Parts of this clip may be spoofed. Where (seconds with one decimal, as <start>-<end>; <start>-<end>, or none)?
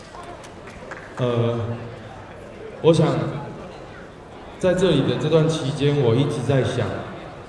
none